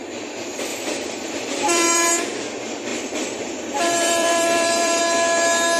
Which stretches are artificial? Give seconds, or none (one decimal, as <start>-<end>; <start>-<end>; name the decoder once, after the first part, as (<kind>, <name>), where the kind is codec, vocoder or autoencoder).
0.7-2.1 (vocoder, BigVGAN v2); 2.9-5.0